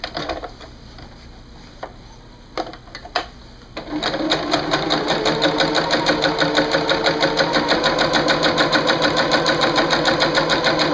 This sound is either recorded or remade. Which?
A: recorded